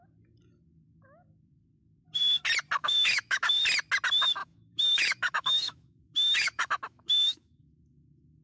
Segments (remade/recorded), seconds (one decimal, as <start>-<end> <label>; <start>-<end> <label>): 0.0-2.8 recorded; 2.8-3.5 remade; 3.5-4.4 recorded; 4.4-8.4 remade